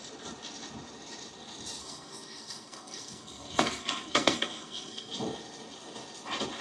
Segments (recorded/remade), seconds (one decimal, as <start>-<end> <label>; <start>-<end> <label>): 0.0-1.8 recorded; 1.8-5.1 remade; 5.1-6.6 recorded